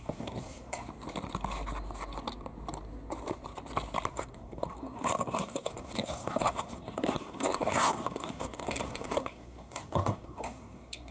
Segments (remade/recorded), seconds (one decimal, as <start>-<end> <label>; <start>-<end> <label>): 0.0-0.9 remade; 0.9-4.1 recorded; 4.1-11.1 remade